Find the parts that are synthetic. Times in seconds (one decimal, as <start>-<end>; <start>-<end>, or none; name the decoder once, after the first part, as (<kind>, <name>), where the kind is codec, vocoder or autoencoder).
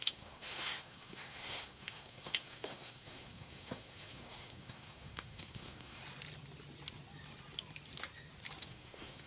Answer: 0.0-6.0 (codec, SNAC); 8.6-9.3